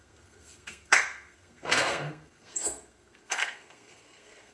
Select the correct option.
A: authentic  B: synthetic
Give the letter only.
B